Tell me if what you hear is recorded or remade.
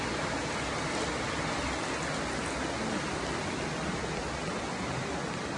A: recorded